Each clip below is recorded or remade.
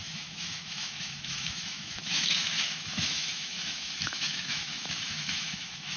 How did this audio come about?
remade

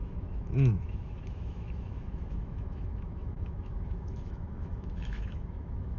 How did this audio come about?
remade